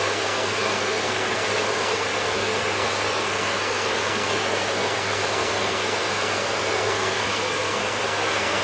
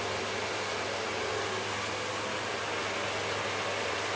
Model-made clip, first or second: first